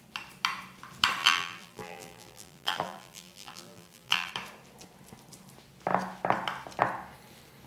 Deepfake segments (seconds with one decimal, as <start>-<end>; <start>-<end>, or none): 1.2-4.3